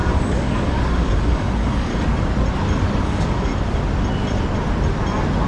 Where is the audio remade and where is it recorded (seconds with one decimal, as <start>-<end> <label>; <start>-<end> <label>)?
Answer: 0.0-1.9 remade; 1.9-3.0 recorded; 3.0-3.5 remade; 3.5-5.5 recorded